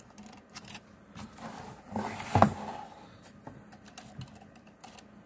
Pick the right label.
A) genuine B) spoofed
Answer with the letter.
A